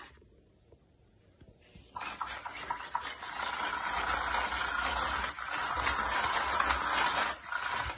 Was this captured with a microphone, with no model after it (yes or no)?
yes